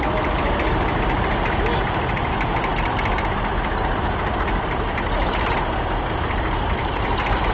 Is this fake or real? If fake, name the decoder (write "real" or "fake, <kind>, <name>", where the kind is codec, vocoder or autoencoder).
real